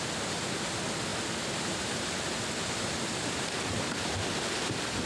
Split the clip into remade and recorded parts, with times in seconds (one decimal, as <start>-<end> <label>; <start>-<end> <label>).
0.0-5.1 recorded